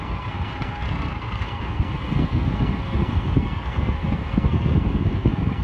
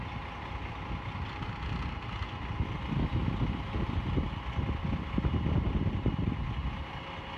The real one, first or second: second